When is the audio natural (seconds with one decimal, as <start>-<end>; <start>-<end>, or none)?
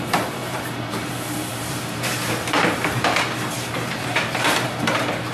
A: 0.0-0.4; 1.1-1.5; 4.7-5.3